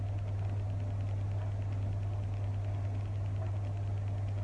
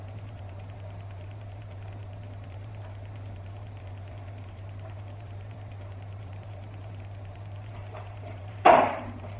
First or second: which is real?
first